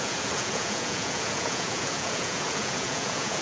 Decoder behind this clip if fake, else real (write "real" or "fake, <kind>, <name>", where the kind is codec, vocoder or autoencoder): fake, vocoder, Vocos